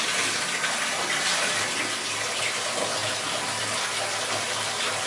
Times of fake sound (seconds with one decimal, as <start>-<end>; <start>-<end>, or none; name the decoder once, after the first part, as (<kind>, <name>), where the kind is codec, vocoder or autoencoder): 3.0-5.1 (vocoder, BigVGAN v2)